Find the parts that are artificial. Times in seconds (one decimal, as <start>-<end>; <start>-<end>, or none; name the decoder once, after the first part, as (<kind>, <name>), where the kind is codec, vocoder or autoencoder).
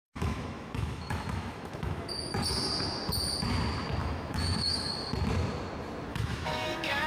0.0-2.3 (autoencoder, DAC-VAE); 4.0-4.9; 6.1-7.1